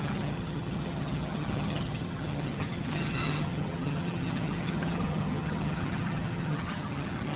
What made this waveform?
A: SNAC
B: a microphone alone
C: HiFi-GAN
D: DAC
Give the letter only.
C